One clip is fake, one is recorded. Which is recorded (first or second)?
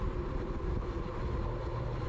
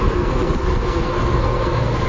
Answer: first